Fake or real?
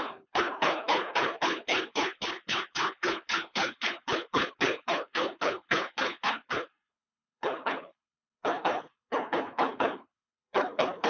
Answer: fake